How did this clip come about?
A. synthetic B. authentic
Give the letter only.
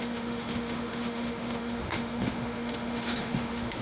A